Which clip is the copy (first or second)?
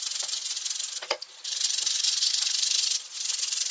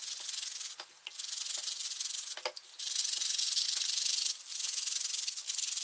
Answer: first